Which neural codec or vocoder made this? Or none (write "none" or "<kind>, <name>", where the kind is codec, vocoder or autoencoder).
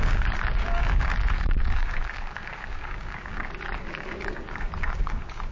codec, DAC